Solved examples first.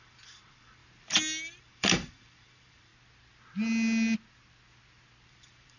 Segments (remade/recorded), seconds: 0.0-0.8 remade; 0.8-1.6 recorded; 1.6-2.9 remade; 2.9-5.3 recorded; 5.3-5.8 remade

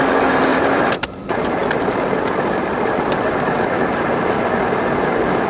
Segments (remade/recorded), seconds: 0.0-0.5 recorded; 0.5-1.2 remade; 1.2-1.6 recorded; 1.6-3.9 remade; 3.9-5.5 recorded

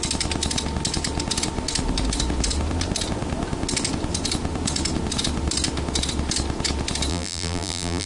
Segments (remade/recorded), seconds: 0.0-7.1 recorded; 7.1-8.1 remade

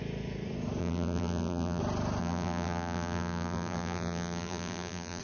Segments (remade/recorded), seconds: 0.0-0.8 recorded; 0.8-1.8 remade; 1.8-2.2 recorded; 2.2-5.2 remade

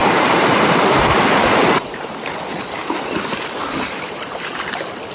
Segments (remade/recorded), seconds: 0.0-2.1 remade; 2.1-5.1 recorded

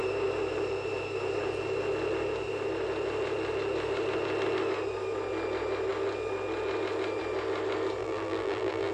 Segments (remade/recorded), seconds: 0.0-8.0 recorded; 8.0-8.9 remade

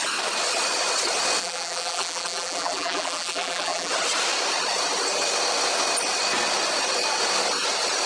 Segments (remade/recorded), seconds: 0.0-1.4 recorded; 1.4-3.9 remade; 3.9-8.1 recorded